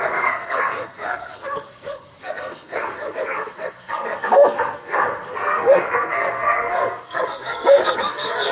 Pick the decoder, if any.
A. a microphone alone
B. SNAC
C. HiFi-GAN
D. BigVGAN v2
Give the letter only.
B